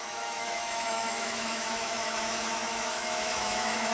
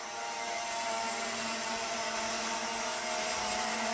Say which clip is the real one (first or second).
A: second